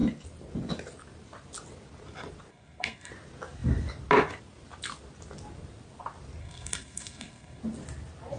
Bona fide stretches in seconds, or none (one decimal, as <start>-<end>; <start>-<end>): 0.0-2.5; 3.1-6.4; 7.6-8.4